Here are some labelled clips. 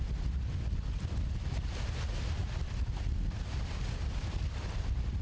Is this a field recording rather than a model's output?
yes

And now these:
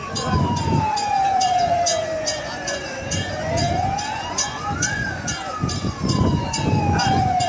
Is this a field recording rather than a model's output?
no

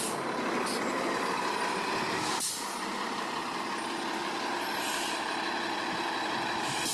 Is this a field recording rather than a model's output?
yes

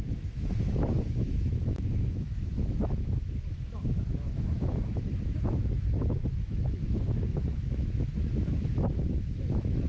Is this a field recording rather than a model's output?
no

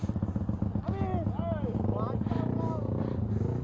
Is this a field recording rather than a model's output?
yes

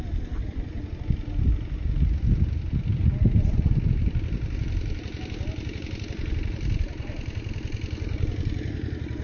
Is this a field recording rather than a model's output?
yes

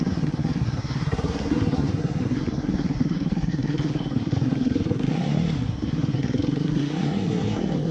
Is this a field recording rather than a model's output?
no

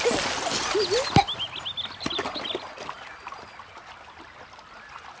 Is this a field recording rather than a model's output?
yes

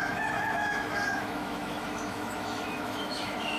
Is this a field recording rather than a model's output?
no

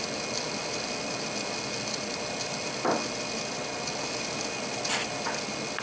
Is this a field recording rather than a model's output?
yes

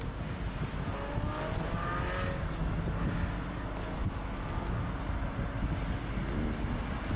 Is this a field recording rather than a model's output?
yes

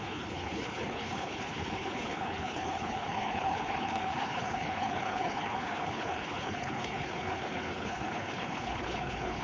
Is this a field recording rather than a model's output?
no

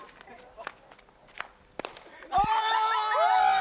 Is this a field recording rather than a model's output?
no